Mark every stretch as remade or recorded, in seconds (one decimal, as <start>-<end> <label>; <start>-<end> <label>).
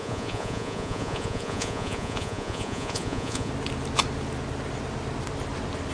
0.0-3.5 remade; 3.5-5.9 recorded